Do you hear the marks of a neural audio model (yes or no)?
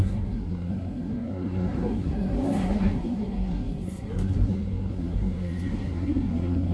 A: yes